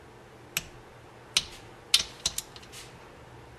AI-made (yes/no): no